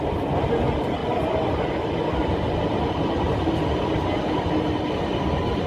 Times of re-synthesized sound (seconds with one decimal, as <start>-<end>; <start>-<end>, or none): none